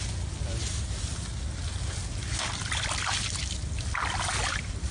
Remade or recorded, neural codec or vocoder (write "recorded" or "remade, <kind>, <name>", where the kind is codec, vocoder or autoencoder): recorded